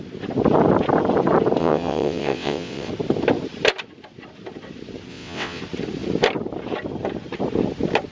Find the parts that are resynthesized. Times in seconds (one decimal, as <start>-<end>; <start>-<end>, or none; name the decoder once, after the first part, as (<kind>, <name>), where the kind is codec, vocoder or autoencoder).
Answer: 1.6-2.9 (vocoder, WaveNeXt); 5.1-5.6